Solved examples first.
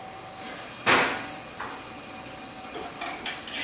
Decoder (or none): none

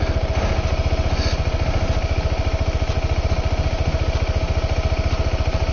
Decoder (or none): none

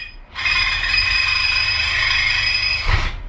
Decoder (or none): none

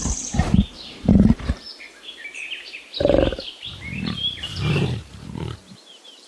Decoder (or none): vocoder, BigVGAN v2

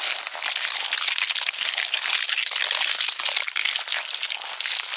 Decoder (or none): none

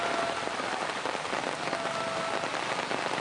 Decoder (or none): none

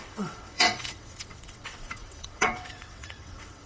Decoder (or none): vocoder, WaveNeXt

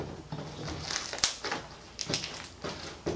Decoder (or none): none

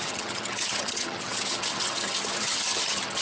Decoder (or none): vocoder, HiFi-GAN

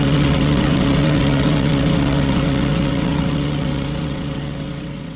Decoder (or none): vocoder, WaveNeXt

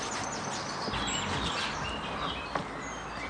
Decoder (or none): none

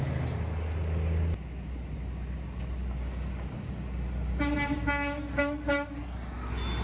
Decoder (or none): none